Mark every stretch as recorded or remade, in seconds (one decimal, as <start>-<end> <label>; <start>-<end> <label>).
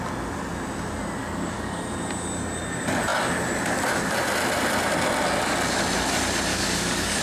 0.0-1.2 recorded; 1.2-1.8 remade; 1.8-6.5 recorded; 6.5-7.2 remade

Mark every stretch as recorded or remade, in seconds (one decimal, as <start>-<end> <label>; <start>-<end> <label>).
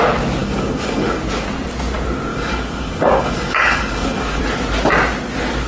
0.0-0.4 recorded; 0.4-1.2 remade; 1.2-2.3 recorded; 2.3-4.4 remade; 4.4-5.7 recorded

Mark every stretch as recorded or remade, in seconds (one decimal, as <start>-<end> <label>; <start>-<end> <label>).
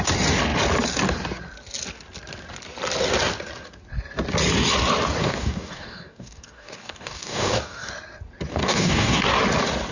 0.0-5.2 recorded; 5.2-7.9 remade; 7.9-8.5 recorded; 8.5-9.2 remade; 9.2-9.9 recorded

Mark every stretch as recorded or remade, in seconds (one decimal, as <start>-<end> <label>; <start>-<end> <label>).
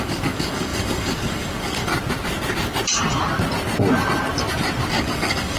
0.0-1.9 remade; 1.9-4.9 recorded; 4.9-5.6 remade